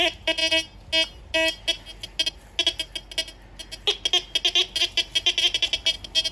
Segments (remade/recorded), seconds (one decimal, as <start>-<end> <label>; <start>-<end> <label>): 0.0-6.3 recorded